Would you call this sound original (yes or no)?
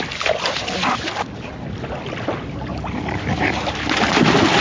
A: yes